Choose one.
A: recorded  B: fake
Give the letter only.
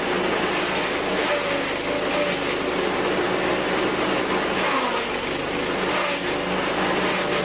A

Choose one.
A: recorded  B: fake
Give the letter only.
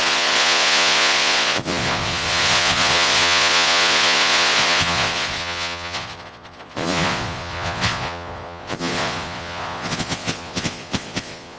B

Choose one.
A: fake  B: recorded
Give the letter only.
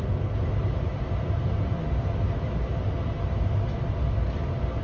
B